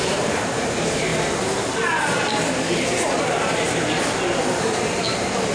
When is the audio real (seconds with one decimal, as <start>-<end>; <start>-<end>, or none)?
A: 1.1-4.4